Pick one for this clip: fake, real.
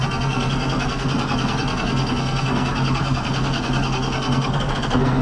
fake